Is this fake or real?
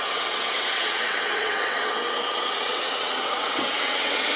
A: fake